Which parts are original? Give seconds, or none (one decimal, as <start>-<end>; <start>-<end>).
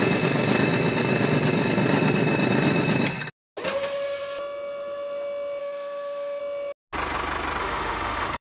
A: 0.0-5.6; 6.4-7.6